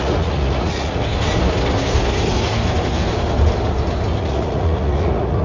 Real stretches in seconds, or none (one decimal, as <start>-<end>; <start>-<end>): 1.0-4.2